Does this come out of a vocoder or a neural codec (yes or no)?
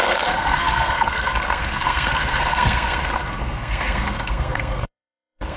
yes